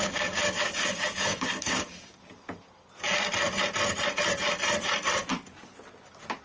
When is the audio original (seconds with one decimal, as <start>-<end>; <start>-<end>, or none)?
2.2-6.4